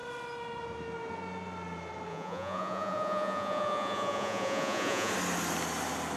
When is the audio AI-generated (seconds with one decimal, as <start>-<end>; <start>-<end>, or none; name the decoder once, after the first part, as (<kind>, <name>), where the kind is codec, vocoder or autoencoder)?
2.1-5.1 (vocoder, Vocos)